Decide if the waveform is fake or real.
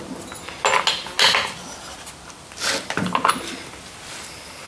real